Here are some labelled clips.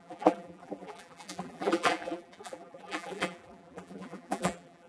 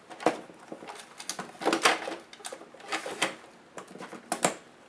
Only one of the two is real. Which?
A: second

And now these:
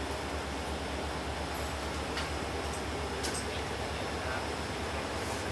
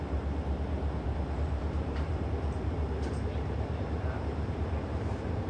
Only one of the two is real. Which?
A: first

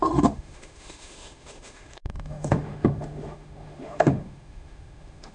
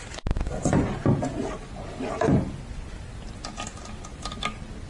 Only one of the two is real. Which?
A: second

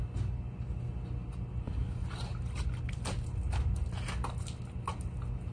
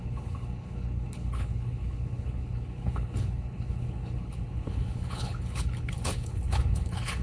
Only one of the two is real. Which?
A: first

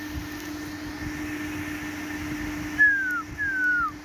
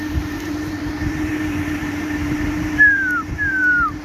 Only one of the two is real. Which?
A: first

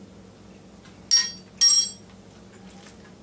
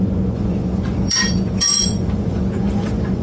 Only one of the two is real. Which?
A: first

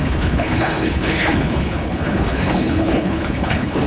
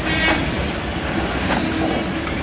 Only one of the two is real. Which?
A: second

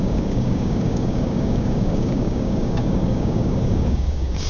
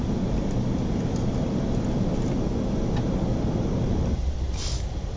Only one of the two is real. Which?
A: second